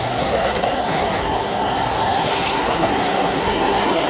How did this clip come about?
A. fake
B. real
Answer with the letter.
A